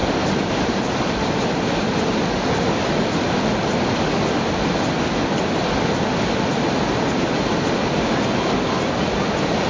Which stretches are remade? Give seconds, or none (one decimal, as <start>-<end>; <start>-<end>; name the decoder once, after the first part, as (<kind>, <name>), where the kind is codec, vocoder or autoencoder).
none